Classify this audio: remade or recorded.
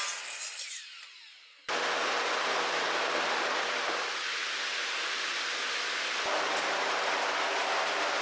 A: recorded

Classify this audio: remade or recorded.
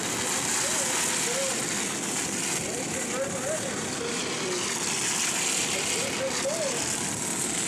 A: recorded